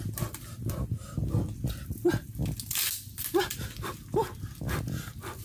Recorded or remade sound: recorded